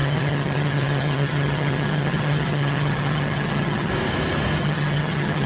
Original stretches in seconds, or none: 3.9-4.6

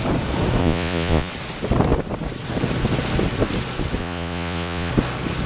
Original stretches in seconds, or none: 0.0-0.6; 1.3-4.0; 4.9-5.5

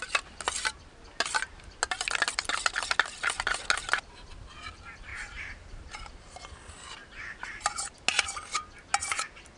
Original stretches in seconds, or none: 0.0-5.1; 6.3-7.0; 8.0-9.6

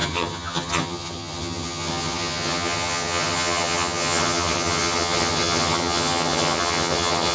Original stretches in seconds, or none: none

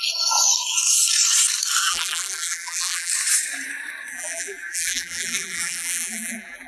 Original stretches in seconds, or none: 0.0-1.8; 3.1-4.1

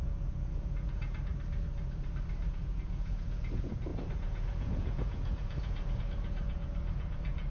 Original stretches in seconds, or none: 1.3-2.5

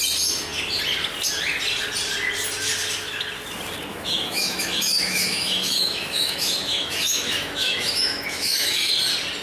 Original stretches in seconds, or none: 0.0-3.9; 8.9-9.4

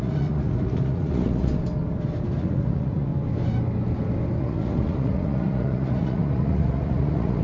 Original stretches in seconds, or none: 1.5-2.4; 3.1-4.4